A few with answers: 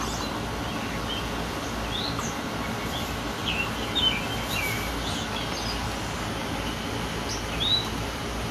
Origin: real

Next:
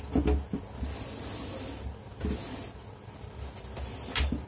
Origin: real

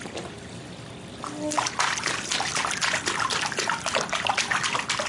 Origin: real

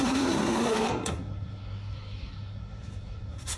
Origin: fake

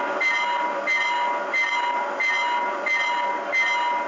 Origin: real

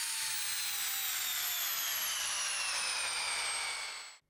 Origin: real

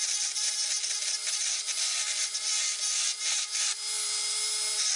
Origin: real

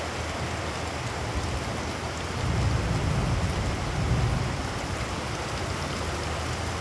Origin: real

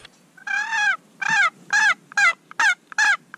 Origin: real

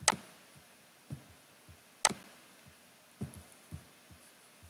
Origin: real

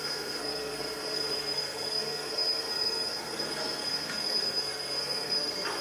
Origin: fake